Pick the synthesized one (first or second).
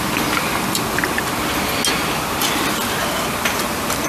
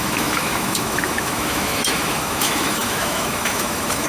second